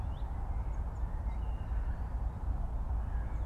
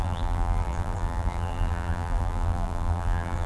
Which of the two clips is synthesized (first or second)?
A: second